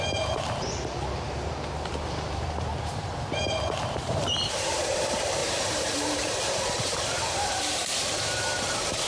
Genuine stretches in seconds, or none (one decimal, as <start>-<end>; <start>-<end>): 3.1-3.8